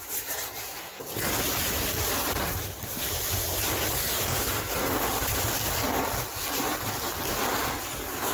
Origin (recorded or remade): recorded